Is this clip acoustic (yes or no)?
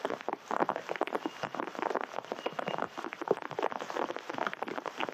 yes